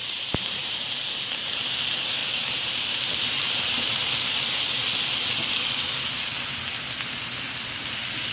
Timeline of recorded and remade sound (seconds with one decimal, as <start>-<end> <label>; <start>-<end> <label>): 0.0-1.1 remade; 1.1-2.2 recorded; 2.2-4.3 remade; 4.3-8.3 recorded